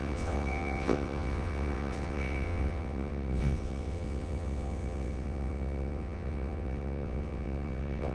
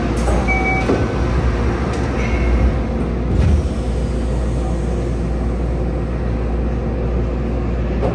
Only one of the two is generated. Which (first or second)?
first